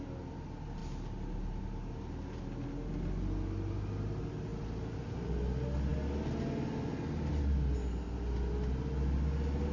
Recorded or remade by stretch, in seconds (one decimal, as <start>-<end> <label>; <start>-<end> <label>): 0.0-9.7 recorded